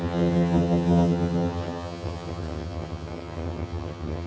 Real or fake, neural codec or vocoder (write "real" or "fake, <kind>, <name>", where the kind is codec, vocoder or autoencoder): fake, vocoder, HiFi-GAN